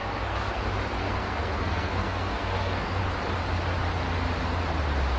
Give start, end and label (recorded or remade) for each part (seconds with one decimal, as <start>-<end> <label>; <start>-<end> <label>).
0.0-0.6 remade; 0.6-1.0 recorded; 1.0-3.0 remade; 3.0-5.2 recorded